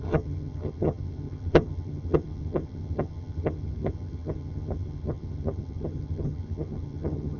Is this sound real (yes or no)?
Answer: no